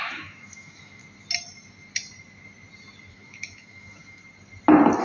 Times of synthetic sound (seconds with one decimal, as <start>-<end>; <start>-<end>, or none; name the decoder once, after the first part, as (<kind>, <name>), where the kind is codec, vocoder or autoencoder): 0.0-1.0 (autoencoder, DAC-VAE); 3.1-4.2